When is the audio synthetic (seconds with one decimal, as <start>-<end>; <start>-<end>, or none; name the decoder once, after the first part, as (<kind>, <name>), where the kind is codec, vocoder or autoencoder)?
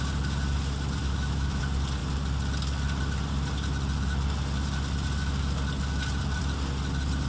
1.0-1.6 (autoencoder, DAC-VAE)